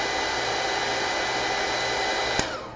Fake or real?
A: real